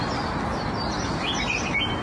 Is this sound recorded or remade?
recorded